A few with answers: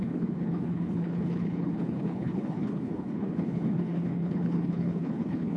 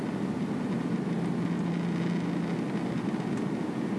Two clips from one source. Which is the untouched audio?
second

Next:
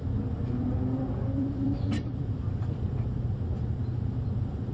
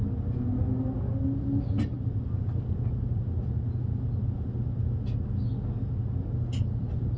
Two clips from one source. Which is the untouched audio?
second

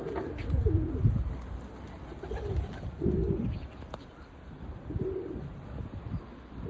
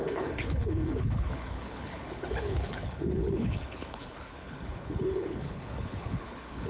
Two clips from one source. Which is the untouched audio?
first